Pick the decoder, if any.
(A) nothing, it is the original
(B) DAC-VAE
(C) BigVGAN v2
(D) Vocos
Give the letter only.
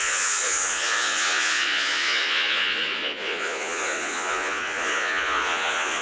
D